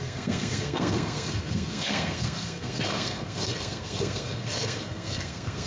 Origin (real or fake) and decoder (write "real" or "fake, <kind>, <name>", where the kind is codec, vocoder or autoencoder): fake, codec, SNAC